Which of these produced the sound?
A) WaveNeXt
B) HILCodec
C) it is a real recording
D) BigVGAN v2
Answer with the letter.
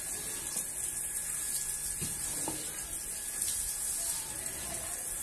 C